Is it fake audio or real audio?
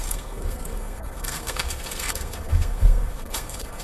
fake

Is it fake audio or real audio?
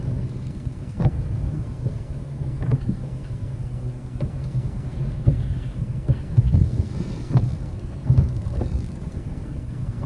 fake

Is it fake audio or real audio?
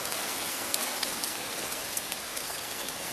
fake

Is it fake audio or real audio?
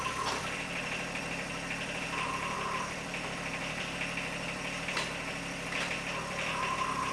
real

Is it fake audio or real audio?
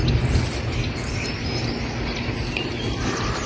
real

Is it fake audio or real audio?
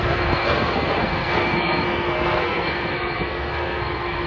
fake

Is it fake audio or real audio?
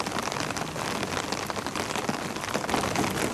real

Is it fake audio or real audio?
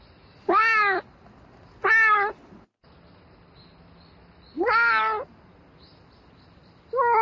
real